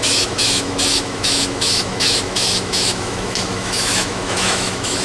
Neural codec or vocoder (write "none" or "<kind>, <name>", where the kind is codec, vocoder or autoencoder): autoencoder, DAC-VAE